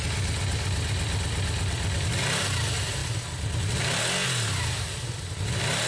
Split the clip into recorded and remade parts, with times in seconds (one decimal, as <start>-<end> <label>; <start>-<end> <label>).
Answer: 0.0-5.9 recorded